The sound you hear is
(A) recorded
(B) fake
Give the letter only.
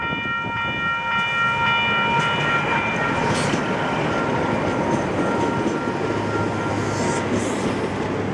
A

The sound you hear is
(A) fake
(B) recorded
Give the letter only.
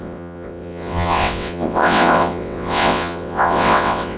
A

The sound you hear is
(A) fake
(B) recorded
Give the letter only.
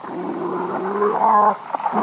B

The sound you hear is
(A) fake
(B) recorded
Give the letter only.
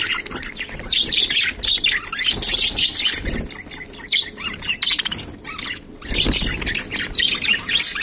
B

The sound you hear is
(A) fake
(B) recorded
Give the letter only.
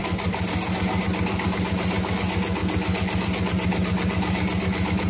B